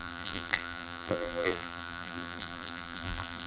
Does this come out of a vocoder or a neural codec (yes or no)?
yes